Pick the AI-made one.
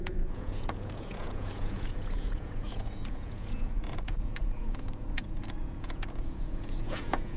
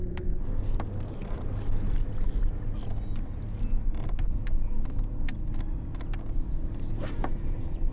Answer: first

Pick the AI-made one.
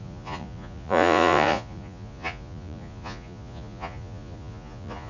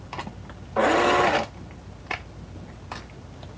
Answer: first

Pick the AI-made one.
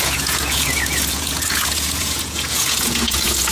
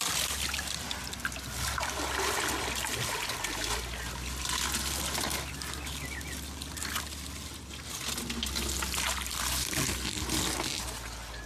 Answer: first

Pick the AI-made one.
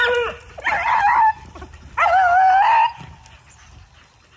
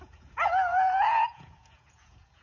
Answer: second